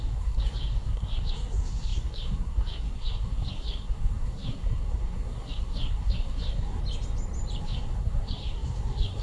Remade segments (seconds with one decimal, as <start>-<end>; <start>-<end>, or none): 0.0-6.8; 7.6-9.2